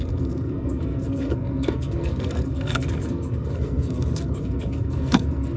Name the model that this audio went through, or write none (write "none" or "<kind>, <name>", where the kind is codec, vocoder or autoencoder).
codec, SNAC